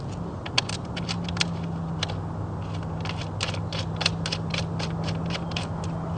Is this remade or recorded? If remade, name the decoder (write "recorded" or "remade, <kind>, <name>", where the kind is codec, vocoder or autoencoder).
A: recorded